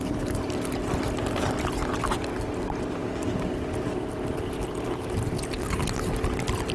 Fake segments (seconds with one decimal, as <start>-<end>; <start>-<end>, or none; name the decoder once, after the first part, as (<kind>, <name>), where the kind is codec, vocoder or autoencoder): none